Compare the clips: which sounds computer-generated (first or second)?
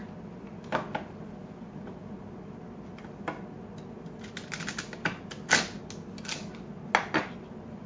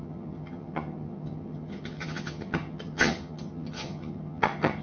second